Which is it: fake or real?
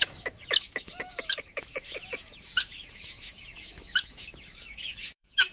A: fake